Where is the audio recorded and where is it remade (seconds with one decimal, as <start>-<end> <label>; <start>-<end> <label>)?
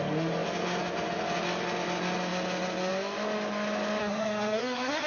0.0-4.0 recorded; 4.0-5.1 remade